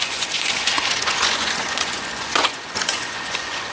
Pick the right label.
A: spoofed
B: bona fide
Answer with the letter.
A